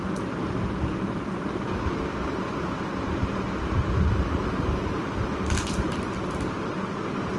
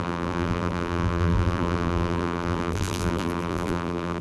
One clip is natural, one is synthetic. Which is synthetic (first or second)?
second